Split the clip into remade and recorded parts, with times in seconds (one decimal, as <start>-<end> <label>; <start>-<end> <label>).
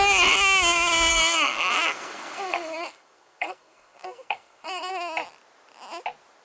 0.0-1.1 recorded; 1.1-4.9 remade; 4.9-6.4 recorded